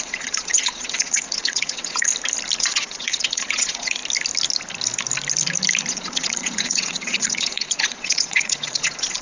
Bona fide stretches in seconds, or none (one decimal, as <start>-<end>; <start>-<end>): 2.1-2.6; 4.0-5.9